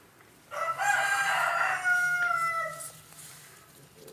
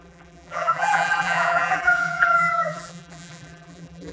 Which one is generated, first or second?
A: second